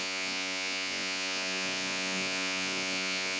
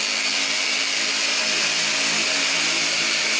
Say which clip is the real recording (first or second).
second